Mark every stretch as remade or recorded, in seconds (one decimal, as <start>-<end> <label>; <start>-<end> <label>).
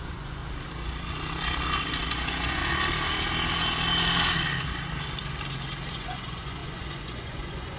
0.0-0.4 remade; 0.4-2.1 recorded; 2.1-2.6 remade; 2.6-5.9 recorded; 5.9-7.8 remade